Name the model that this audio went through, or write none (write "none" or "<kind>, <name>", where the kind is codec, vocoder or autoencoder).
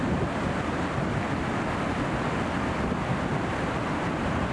none